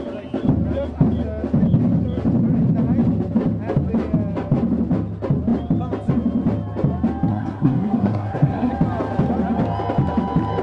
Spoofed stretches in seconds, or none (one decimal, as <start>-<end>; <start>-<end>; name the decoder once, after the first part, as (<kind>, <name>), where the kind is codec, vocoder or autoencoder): 7.3-8.7 (codec, SNAC)